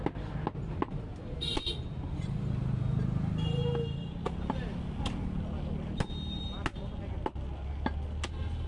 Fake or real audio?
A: real